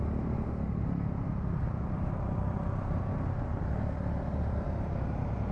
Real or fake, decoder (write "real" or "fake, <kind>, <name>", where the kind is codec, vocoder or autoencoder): fake, vocoder, BigVGAN v2